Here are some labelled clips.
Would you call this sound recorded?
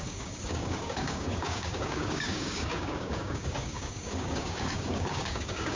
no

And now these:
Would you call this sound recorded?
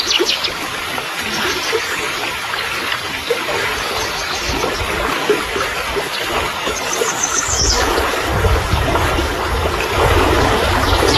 no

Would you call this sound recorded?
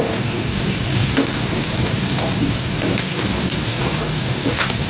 no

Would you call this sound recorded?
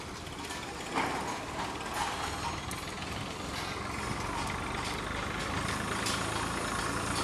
yes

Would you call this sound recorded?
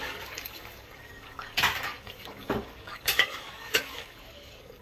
no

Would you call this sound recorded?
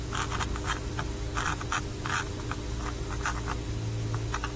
yes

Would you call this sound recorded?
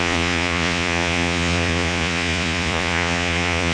no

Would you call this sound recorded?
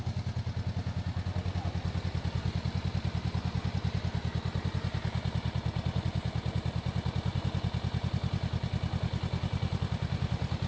yes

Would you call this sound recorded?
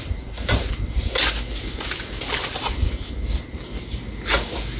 yes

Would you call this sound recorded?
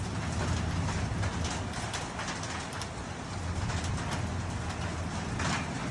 yes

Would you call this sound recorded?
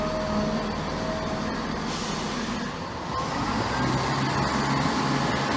yes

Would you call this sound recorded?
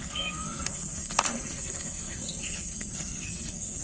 no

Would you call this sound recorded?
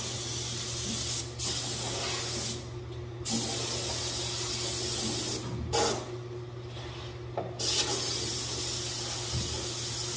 yes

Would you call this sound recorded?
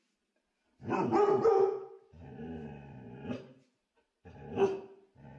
yes